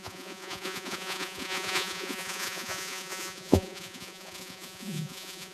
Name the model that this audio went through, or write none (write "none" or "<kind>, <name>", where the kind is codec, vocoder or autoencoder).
vocoder, Vocos